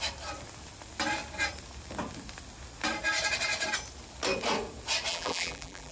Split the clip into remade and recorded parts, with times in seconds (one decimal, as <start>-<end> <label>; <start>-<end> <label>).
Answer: 0.0-5.1 recorded; 5.1-5.9 remade